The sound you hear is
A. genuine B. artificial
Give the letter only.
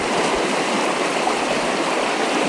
A